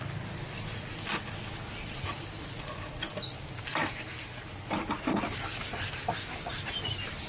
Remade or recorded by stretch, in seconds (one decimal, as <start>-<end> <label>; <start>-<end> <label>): 0.0-7.3 recorded